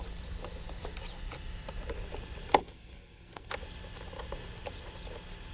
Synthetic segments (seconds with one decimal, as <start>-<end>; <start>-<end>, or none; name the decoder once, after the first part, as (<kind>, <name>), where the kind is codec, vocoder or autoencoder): 2.6-3.5 (codec, SNAC)